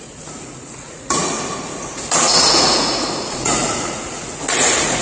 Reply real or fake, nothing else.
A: fake